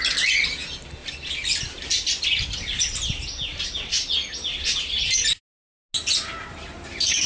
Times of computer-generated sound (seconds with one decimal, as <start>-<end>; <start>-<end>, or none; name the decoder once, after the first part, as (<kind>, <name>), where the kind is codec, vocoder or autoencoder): none